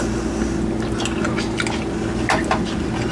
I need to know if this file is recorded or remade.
recorded